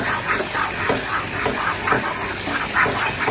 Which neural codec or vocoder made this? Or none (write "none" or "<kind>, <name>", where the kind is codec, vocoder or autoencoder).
none